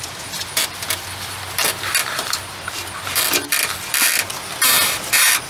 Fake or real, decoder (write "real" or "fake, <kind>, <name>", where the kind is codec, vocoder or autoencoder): fake, vocoder, BigVGAN v2